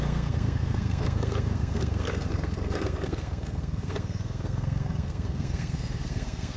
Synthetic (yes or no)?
yes